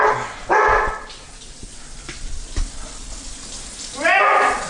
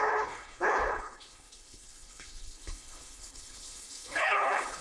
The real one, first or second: first